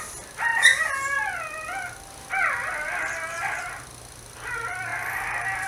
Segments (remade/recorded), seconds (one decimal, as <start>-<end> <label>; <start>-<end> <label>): 0.0-5.7 recorded